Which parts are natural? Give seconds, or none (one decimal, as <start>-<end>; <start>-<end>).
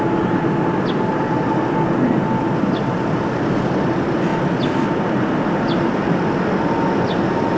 0.0-7.6